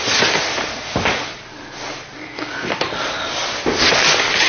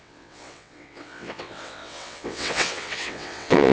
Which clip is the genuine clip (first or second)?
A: first